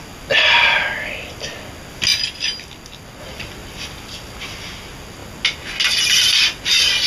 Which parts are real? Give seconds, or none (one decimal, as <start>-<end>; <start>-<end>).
0.0-7.1